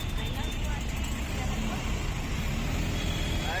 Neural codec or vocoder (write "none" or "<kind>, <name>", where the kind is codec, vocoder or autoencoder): none